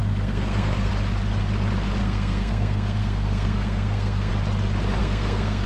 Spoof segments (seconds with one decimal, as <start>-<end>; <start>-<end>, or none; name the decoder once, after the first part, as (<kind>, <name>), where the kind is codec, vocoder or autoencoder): 0.0-0.9 (codec, SNAC); 2.0-4.3; 5.0-5.7